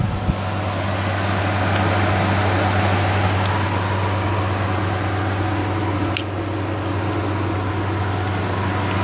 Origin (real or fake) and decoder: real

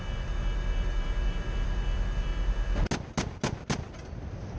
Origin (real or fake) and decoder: real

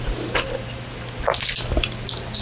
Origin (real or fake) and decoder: real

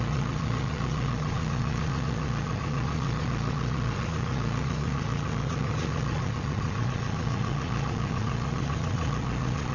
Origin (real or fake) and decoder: fake, vocoder, Vocos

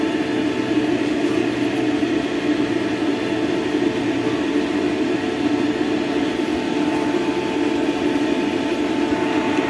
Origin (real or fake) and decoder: real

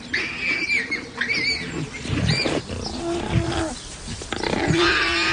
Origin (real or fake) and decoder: real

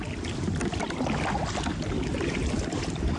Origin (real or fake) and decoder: real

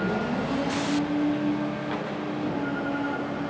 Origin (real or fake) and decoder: real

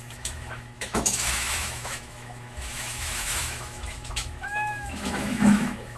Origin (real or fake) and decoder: fake, autoencoder, DAC-VAE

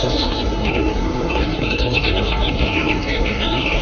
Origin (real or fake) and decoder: fake, codec, SNAC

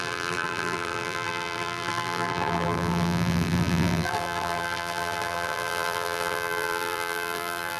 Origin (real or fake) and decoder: fake, vocoder, BigVGAN v2